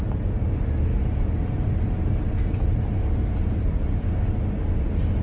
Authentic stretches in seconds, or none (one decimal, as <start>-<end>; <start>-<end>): 0.0-0.9; 4.0-5.2